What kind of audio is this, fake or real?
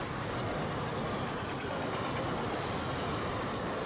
real